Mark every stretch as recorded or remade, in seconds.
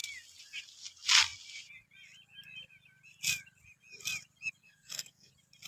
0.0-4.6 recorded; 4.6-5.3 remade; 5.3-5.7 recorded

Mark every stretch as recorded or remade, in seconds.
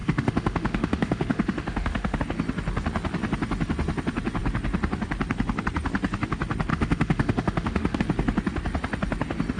0.0-2.2 remade; 2.2-6.7 recorded; 6.7-8.0 remade; 8.0-9.6 recorded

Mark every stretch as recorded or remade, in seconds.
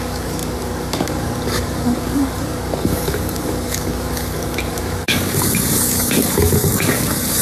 0.0-7.4 remade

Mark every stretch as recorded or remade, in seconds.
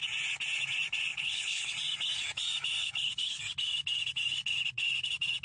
0.0-1.1 recorded; 1.1-1.7 remade; 1.7-2.8 recorded; 2.8-3.4 remade; 3.4-5.4 recorded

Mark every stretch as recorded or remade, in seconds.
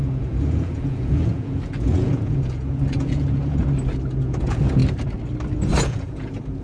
0.0-3.6 remade; 3.6-4.2 recorded; 4.2-4.8 remade; 4.8-5.8 recorded; 5.8-6.6 remade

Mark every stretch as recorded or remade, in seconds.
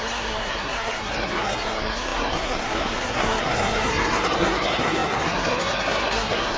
0.0-6.6 remade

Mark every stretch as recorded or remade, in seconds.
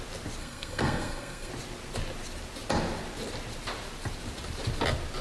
0.0-0.4 recorded; 0.4-1.5 remade; 1.5-5.2 recorded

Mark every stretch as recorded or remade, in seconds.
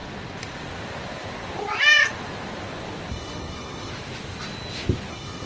0.0-3.1 recorded; 3.1-3.9 remade; 3.9-5.1 recorded; 5.1-5.5 remade